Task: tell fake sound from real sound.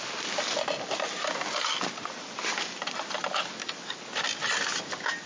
real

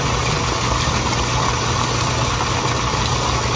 real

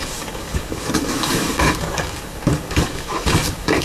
fake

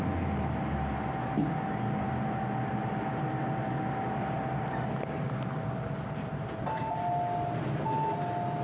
real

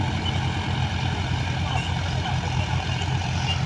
real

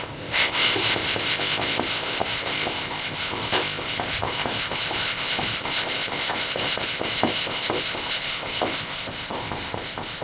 fake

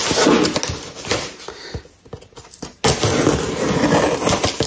real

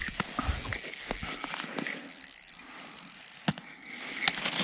real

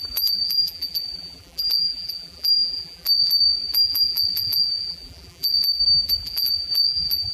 fake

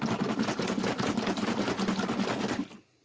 real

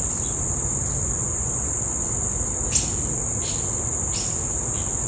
real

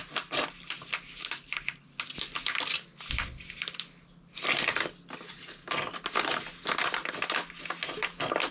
real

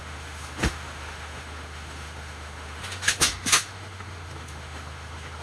fake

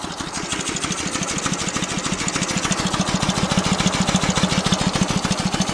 real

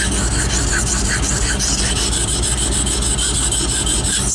real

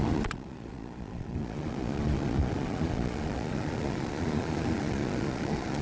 fake